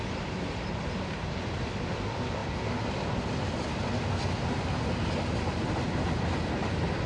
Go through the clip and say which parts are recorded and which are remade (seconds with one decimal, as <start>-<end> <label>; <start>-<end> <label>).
0.0-7.1 recorded